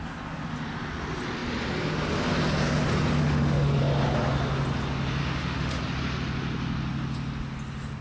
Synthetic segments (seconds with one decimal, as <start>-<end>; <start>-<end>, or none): 3.2-3.8; 5.2-5.8